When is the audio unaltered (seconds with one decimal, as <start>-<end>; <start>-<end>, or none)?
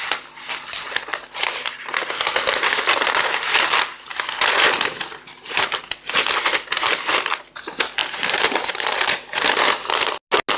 0.0-8.0; 9.6-10.6